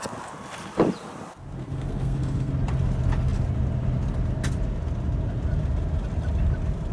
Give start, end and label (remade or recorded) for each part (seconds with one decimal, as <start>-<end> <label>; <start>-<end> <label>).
0.0-1.6 recorded; 1.6-2.5 remade; 2.5-6.9 recorded